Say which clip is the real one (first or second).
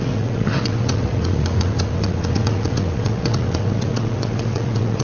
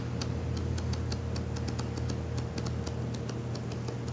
second